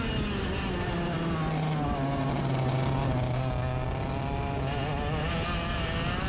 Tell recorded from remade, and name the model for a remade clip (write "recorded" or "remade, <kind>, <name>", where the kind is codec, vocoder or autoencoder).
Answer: recorded